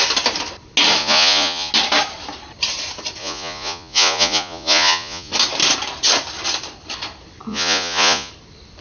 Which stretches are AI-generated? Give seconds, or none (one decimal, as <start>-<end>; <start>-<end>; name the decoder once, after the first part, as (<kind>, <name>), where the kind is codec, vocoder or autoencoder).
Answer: 1.0-1.7 (vocoder, Vocos); 3.2-5.3; 7.5-8.3